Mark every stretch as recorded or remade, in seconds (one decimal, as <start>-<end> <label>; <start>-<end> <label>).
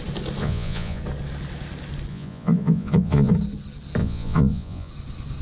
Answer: 0.0-0.4 recorded; 0.4-1.0 remade; 1.0-2.1 recorded; 2.1-3.3 remade; 3.3-4.0 recorded; 4.0-4.9 remade; 4.9-5.4 recorded